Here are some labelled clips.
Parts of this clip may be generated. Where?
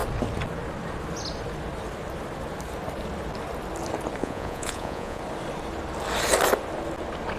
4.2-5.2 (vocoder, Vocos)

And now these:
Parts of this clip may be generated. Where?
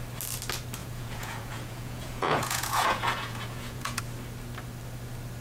0.8-4.0 (vocoder, Vocos)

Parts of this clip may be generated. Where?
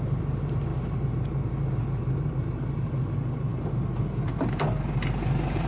none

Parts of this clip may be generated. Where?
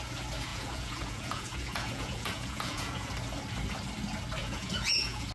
0.5-3.1 (vocoder, Vocos); 4.4-5.3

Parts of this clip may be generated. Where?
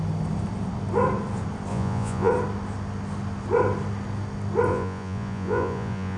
1.7-2.3 (vocoder, Vocos); 4.7-6.2